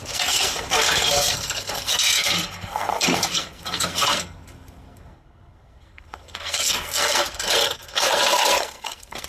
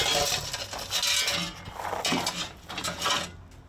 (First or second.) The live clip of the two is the second